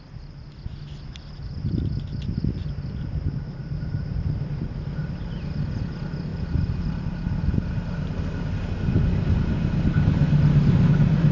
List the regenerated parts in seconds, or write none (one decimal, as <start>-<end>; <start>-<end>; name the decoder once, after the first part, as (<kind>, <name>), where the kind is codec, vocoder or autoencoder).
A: 3.6-5.0 (vocoder, BigVGAN v2); 6.3-7.7